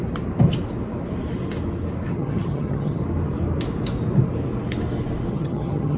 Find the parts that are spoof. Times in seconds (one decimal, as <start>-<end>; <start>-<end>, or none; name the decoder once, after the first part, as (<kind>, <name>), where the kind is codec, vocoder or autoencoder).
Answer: 2.1-3.0 (vocoder, HiFi-GAN); 5.3-6.0